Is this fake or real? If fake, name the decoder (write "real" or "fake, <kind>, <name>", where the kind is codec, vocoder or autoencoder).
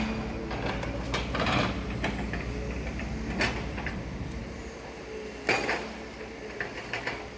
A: real